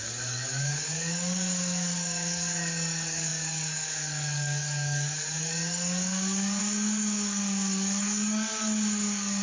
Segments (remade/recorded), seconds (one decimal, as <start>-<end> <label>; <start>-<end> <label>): 0.0-9.4 remade